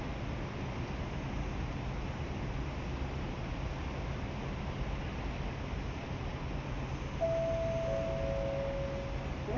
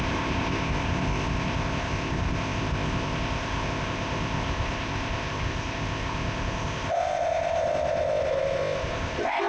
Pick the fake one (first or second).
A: second